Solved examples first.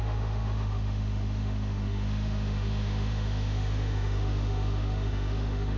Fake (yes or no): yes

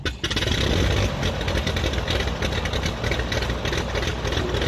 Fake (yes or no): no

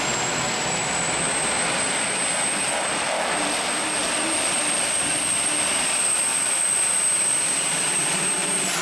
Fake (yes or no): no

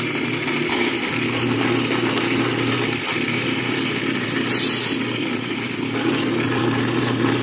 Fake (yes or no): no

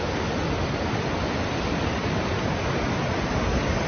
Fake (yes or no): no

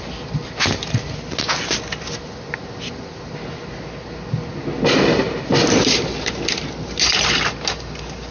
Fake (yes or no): no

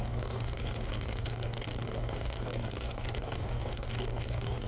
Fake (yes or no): yes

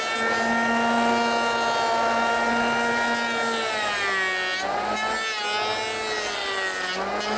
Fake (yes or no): no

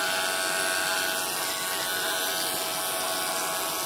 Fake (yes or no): no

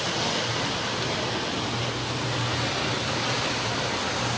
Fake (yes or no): no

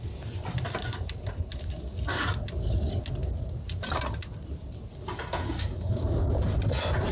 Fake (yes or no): no